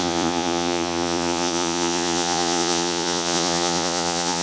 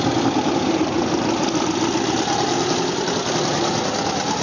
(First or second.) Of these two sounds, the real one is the second